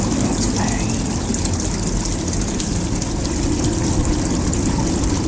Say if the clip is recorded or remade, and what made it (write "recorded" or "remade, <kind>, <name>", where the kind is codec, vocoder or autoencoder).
recorded